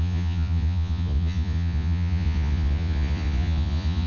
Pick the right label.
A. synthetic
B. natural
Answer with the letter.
A